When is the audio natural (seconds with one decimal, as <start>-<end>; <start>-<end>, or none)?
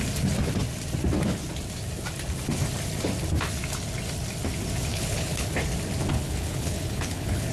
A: 0.0-4.9; 5.5-6.1